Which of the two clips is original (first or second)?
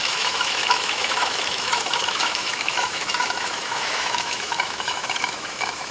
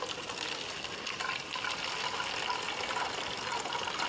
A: second